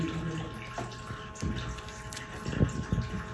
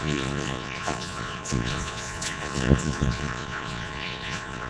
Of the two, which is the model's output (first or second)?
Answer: second